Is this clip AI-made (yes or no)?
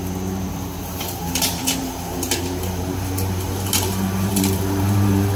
yes